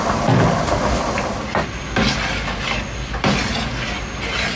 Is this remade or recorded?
recorded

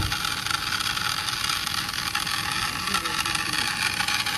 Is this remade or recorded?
recorded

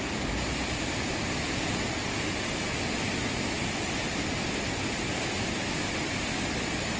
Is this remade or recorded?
recorded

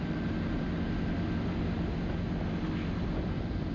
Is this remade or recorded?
recorded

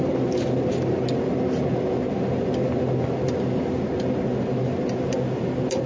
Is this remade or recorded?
recorded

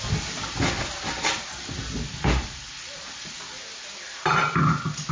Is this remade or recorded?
recorded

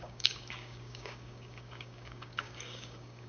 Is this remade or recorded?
remade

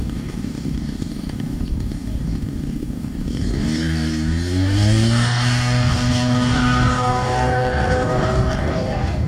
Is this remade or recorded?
remade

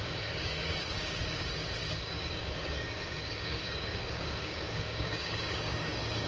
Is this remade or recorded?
remade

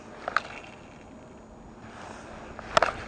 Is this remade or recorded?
recorded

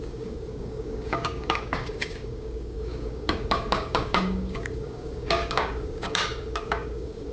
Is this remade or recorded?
remade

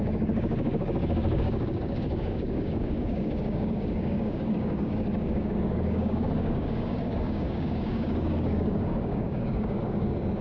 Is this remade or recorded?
remade